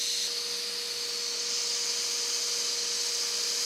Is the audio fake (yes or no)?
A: no